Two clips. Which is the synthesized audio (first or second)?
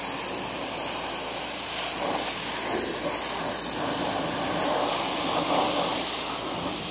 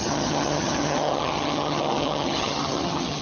second